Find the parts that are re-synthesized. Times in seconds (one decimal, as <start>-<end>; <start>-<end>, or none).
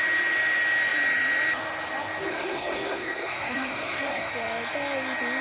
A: 2.3-4.3